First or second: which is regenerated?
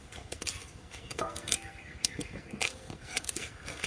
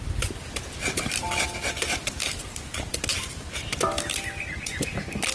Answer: first